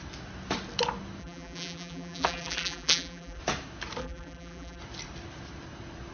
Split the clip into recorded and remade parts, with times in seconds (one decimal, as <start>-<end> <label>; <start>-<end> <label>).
0.0-1.2 recorded; 1.2-3.4 remade; 3.4-4.0 recorded; 4.0-4.8 remade; 4.8-6.1 recorded